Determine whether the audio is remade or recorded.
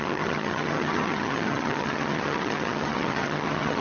remade